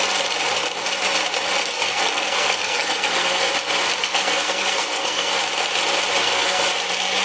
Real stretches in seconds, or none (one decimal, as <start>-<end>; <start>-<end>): 0.0-1.6; 3.5-4.0; 5.3-6.2; 6.7-7.2